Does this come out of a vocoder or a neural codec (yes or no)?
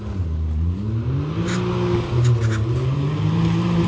no